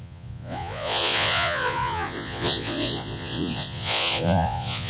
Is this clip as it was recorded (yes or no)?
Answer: no